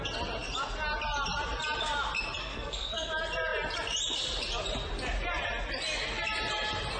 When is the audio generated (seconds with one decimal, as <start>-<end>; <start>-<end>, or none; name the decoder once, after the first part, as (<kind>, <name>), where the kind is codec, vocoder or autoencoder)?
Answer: 2.4-3.1 (codec, SNAC)